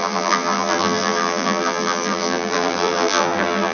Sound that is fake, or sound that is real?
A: fake